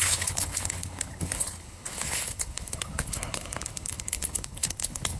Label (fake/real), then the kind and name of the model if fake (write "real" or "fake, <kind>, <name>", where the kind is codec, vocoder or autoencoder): fake, codec, HILCodec